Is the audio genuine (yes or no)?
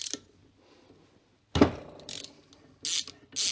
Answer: yes